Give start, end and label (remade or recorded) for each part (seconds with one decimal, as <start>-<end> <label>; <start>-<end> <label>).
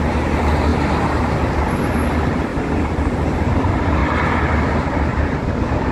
0.0-5.9 recorded